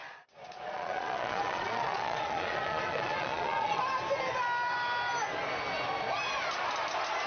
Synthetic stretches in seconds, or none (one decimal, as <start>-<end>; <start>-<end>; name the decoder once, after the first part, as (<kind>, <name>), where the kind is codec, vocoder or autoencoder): 0.0-3.8 (vocoder, Vocos)